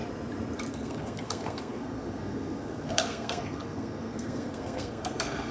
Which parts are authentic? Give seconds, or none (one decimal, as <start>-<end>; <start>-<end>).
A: 0.0-0.7